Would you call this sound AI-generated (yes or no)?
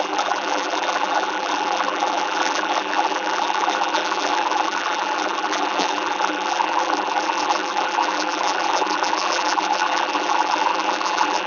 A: yes